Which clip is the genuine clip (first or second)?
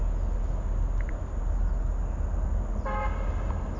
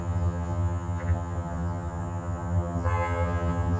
first